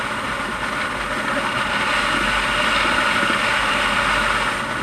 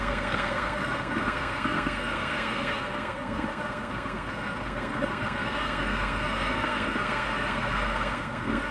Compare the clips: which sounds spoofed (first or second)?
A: second